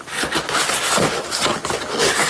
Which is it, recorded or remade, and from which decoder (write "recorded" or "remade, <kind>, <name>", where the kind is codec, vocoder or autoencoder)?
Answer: recorded